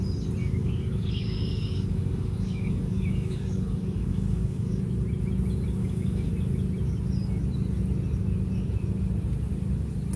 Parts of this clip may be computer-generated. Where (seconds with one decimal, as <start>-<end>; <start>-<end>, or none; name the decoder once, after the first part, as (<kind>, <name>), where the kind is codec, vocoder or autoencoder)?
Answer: 0.4-4.8 (codec, DAC); 5.8-6.3